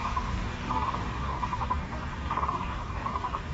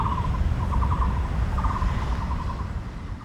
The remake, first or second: first